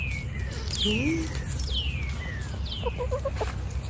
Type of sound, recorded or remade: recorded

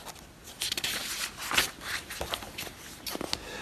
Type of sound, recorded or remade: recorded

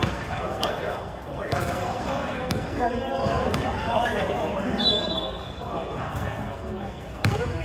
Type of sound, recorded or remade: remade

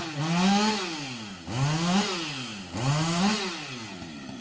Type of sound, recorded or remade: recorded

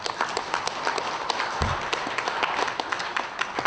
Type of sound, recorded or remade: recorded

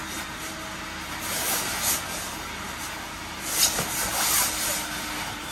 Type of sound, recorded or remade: recorded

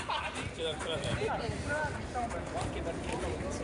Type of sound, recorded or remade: recorded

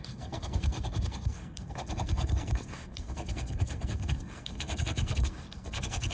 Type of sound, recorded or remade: remade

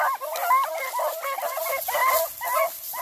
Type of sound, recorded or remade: recorded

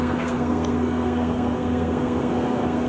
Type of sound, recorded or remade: remade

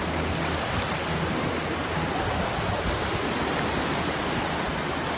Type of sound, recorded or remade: recorded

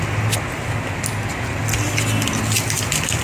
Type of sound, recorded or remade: recorded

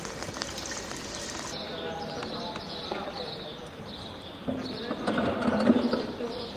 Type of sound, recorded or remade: recorded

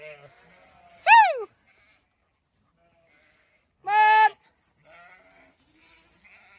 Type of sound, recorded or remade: recorded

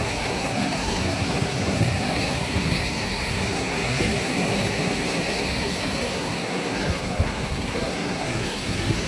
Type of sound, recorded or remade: remade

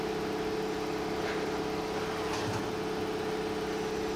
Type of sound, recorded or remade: recorded